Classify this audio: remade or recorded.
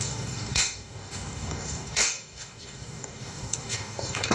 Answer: remade